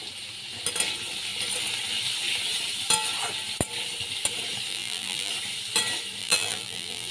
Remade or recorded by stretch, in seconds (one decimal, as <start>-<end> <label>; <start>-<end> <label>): 0.0-4.7 recorded; 4.7-5.3 remade; 5.3-6.2 recorded; 6.2-7.1 remade